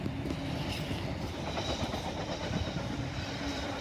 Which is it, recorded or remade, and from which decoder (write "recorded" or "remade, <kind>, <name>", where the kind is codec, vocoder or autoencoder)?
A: remade, vocoder, BigVGAN v2